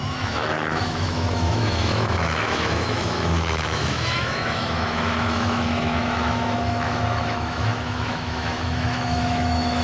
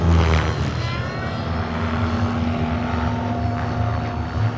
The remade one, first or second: first